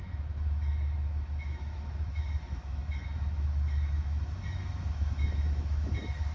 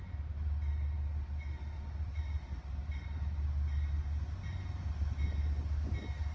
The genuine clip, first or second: second